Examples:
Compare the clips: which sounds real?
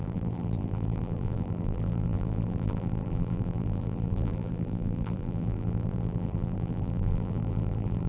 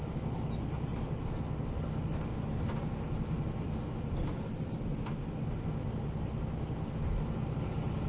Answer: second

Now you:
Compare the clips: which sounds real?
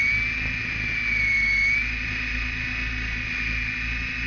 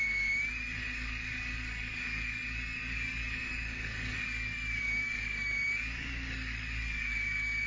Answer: first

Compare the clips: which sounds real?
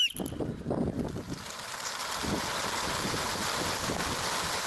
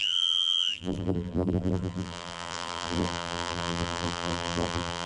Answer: first